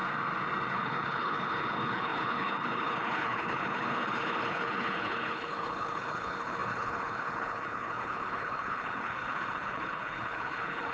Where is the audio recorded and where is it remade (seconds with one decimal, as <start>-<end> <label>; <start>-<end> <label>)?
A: 0.0-0.7 recorded; 0.7-10.9 remade